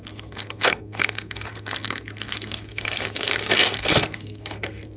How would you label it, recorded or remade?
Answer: remade